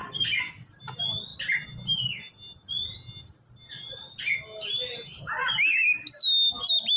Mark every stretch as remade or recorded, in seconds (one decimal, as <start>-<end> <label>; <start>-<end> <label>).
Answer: 0.0-7.0 recorded